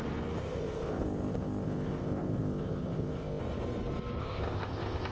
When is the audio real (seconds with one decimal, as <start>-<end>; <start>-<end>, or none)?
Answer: 0.0-0.4; 3.4-4.2